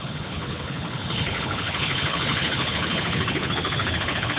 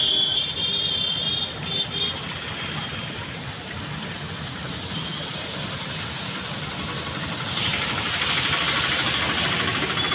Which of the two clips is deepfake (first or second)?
first